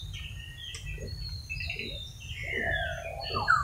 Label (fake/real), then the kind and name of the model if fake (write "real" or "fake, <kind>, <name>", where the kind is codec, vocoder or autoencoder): real